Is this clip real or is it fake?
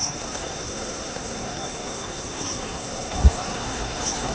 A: fake